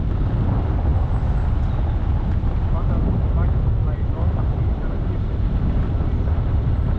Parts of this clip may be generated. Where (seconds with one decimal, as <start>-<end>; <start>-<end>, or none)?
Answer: 3.8-5.5